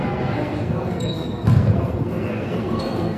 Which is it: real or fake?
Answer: fake